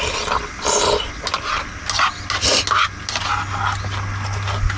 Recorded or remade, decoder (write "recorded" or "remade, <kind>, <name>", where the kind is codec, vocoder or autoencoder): recorded